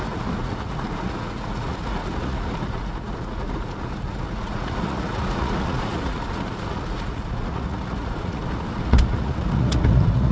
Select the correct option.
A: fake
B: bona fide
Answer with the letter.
A